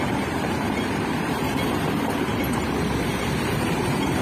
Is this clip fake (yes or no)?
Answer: yes